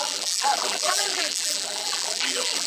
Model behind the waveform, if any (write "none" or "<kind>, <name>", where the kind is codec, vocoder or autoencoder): vocoder, BigVGAN v2